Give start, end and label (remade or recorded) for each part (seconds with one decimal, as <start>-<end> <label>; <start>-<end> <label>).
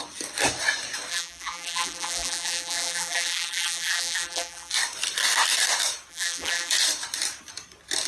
0.0-1.1 recorded; 1.1-4.7 remade; 4.7-6.1 recorded; 6.1-6.7 remade; 6.7-8.1 recorded